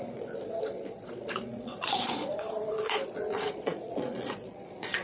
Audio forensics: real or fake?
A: fake